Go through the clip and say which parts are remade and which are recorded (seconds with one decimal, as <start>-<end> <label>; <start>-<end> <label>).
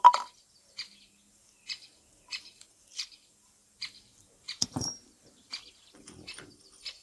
0.0-7.0 remade